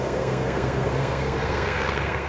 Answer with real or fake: fake